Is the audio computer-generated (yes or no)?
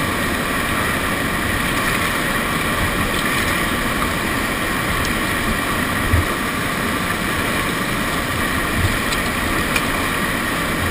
no